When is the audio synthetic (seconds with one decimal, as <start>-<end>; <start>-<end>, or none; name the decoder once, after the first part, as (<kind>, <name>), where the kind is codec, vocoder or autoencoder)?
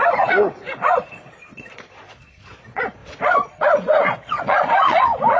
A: 0.0-5.4 (vocoder, Vocos)